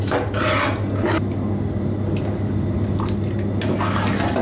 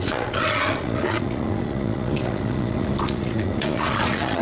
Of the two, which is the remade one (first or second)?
second